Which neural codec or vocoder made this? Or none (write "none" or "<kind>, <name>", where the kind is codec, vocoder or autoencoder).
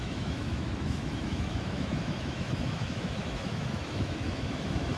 autoencoder, DAC-VAE